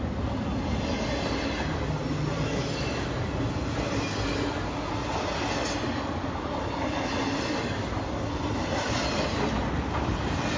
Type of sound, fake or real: real